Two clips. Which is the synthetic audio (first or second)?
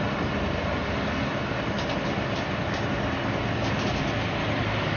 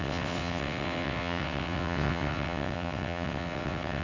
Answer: second